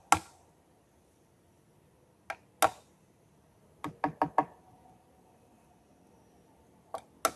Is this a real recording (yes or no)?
yes